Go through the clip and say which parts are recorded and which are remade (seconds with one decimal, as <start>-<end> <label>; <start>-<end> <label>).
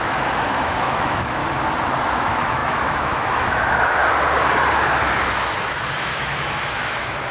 0.0-1.4 remade; 1.4-2.1 recorded; 2.1-4.0 remade; 4.0-6.0 recorded; 6.0-7.3 remade